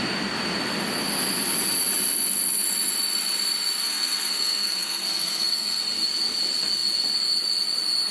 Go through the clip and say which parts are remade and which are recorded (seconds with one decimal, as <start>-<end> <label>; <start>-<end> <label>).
0.0-3.8 recorded; 3.8-5.8 remade; 5.8-8.1 recorded